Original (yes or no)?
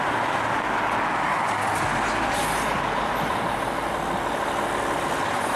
yes